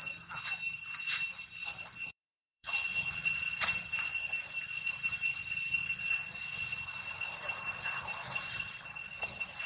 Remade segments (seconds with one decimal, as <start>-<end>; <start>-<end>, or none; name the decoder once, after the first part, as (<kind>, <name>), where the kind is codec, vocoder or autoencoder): 2.0-3.3 (vocoder, WaveNeXt)